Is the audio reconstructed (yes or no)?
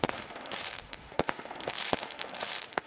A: yes